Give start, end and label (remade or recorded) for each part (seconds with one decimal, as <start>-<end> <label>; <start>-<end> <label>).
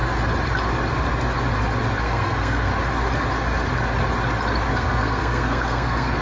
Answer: 0.0-2.0 recorded; 2.0-2.7 remade; 2.7-4.7 recorded; 4.7-6.2 remade